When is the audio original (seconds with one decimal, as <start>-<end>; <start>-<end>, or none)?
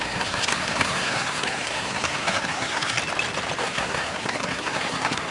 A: 3.0-3.6